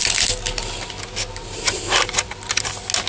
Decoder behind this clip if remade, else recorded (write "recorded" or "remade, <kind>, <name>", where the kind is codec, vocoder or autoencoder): recorded